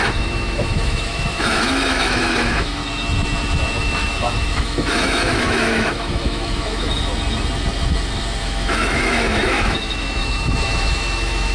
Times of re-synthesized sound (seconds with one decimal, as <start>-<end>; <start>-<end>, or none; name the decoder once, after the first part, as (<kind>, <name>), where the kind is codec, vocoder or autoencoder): 0.0-2.8 (autoencoder, DAC-VAE); 3.8-7.1; 8.4-11.5